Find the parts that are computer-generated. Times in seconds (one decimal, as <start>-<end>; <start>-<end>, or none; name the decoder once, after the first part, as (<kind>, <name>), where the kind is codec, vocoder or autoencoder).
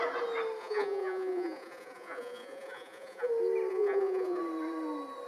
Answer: 0.6-3.3 (vocoder, Vocos); 3.7-4.4